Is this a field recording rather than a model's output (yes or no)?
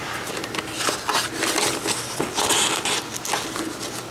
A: yes